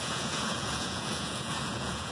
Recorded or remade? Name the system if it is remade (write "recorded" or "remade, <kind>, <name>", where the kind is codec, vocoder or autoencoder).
remade, vocoder, Vocos